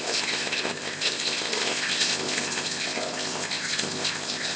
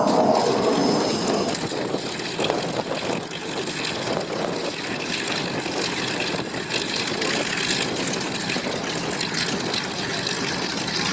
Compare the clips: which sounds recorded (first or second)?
second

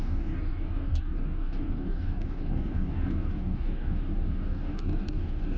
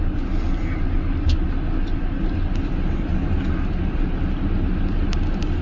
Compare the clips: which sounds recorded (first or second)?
second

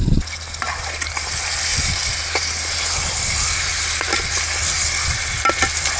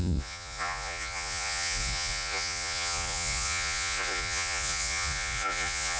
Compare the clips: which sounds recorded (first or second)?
first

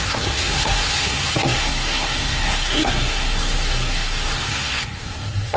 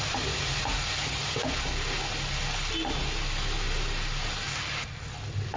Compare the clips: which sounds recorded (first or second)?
second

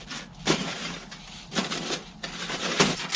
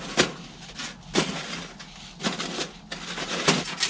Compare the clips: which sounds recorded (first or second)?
second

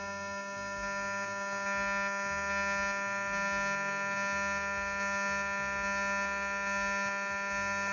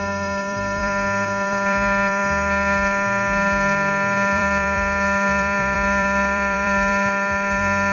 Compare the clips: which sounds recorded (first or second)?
first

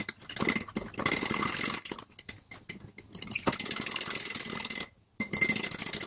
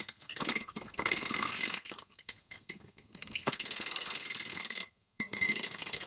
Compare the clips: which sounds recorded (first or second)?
first